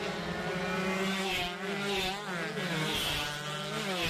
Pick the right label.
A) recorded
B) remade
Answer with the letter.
A